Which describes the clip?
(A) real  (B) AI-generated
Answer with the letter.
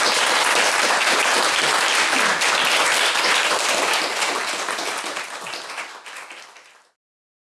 A